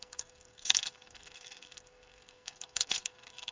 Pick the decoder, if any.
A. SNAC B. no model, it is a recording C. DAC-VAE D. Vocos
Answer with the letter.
A